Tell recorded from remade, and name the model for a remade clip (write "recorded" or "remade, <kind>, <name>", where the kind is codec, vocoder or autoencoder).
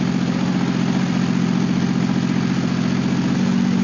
recorded